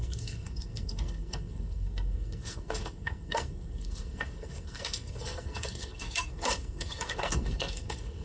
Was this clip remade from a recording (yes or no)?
yes